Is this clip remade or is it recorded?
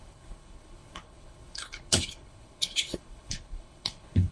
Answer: remade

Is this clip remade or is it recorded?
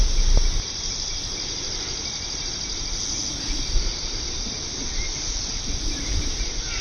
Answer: recorded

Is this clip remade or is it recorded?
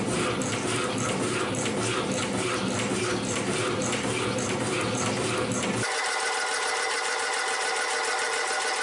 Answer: recorded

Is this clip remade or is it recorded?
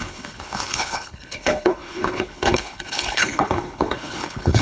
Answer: remade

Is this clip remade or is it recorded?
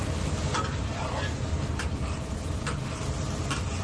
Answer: recorded